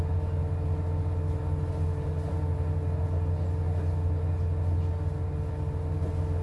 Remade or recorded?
recorded